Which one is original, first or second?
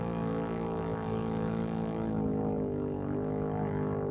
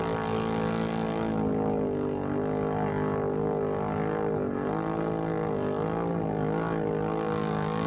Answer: second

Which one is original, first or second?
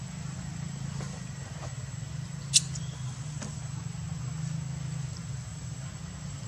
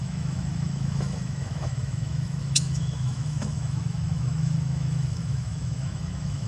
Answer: first